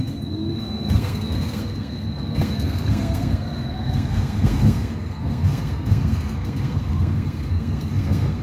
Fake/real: fake